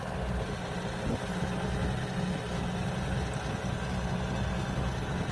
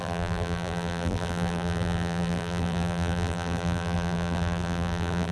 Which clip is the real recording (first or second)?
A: first